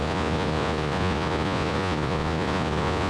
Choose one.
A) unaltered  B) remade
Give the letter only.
B